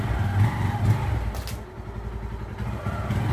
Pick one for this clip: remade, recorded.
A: recorded